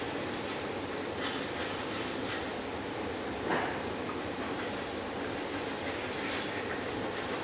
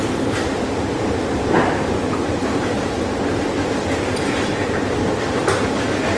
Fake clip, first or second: second